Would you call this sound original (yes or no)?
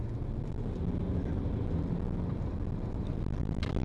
yes